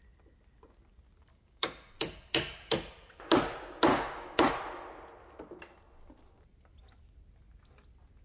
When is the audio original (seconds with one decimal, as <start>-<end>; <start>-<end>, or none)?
0.0-1.3; 2.7-3.9; 4.5-8.2